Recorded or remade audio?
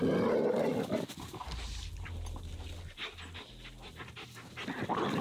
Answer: recorded